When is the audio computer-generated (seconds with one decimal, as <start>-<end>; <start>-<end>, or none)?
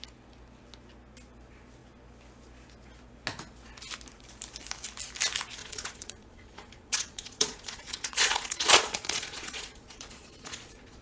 5.6-11.0